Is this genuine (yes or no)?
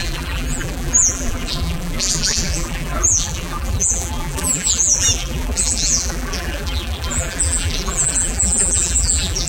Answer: no